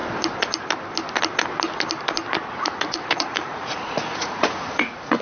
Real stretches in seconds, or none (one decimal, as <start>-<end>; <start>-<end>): 0.0-2.8